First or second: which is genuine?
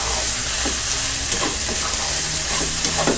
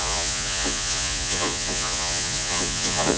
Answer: first